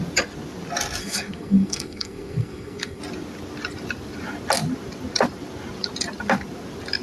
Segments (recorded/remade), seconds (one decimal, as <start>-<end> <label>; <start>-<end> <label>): 0.0-1.0 recorded; 1.0-3.0 remade; 3.0-7.0 recorded